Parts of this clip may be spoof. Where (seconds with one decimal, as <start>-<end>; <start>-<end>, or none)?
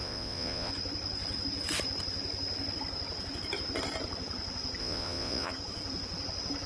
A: 0.0-0.7; 4.8-5.5